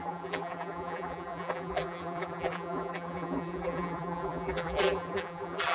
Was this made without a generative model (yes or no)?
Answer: no